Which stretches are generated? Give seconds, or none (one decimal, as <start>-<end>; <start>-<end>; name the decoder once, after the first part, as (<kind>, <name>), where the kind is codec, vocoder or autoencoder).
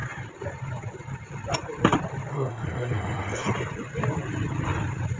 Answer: 2.3-3.5 (codec, SNAC)